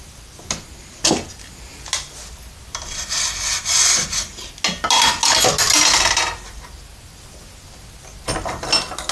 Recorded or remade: recorded